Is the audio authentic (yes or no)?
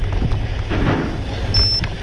yes